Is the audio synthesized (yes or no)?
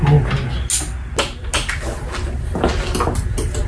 no